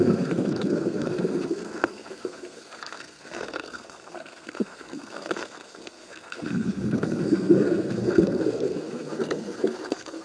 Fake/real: fake